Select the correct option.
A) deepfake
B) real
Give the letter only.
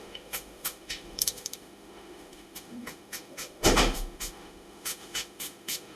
A